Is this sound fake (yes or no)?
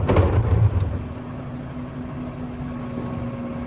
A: no